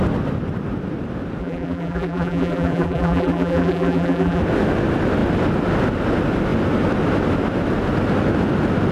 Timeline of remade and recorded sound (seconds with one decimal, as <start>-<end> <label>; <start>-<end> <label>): 0.0-1.4 recorded; 1.4-4.4 remade; 4.4-8.9 recorded